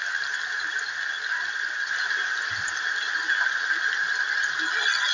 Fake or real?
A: real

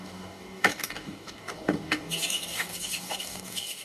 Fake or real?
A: fake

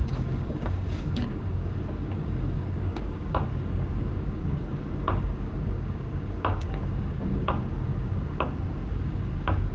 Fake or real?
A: fake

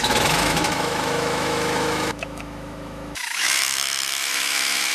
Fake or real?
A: fake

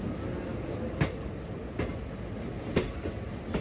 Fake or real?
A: real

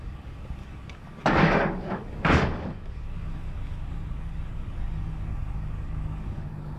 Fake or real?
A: fake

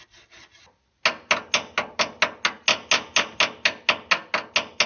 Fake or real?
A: real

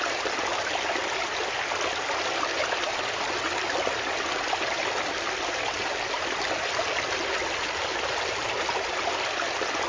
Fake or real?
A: real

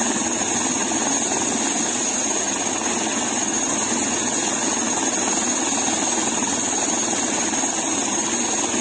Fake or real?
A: real